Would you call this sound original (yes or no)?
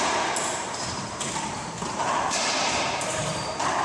no